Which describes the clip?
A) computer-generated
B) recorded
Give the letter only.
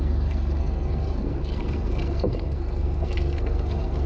A